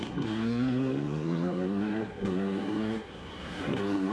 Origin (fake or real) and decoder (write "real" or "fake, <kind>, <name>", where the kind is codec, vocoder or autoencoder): fake, codec, SNAC